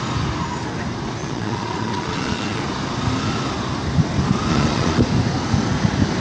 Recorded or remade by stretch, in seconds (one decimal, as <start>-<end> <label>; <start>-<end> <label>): 0.0-1.2 recorded; 1.2-2.6 remade; 2.6-4.5 recorded; 4.5-5.0 remade; 5.0-6.2 recorded